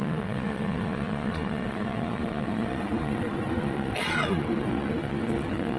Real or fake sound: fake